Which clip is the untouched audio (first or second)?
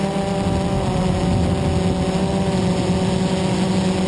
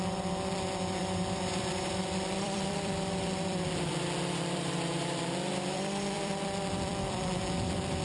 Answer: first